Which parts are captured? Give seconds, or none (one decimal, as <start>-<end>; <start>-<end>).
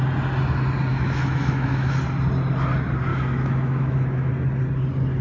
0.0-0.9; 1.9-3.1; 4.3-5.2